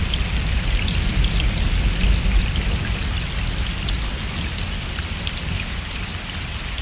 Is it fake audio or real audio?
real